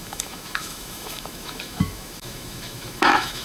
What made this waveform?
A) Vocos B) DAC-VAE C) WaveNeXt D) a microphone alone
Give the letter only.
B